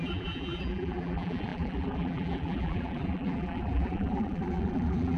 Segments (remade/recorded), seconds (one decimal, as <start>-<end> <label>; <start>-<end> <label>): 0.0-5.2 remade